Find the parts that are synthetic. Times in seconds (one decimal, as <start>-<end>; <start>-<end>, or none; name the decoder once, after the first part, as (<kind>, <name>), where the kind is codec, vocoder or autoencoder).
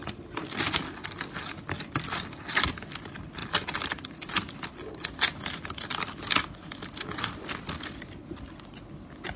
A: none